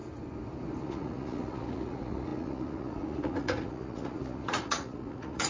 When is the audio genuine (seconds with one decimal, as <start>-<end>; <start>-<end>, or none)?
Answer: 0.0-0.8